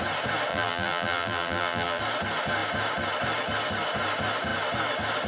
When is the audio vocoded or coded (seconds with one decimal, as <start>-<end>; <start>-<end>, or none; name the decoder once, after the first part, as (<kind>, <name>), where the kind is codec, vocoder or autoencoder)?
0.5-2.0 (vocoder, BigVGAN v2)